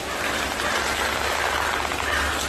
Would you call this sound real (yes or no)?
yes